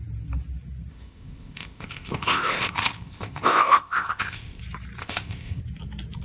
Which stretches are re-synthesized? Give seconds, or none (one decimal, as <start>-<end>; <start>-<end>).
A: 0.9-4.6; 5.0-5.6